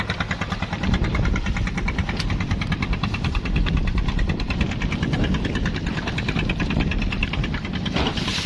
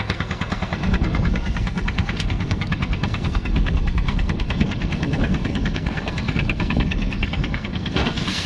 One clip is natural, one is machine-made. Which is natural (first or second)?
first